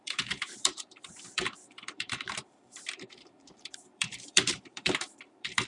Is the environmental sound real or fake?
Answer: fake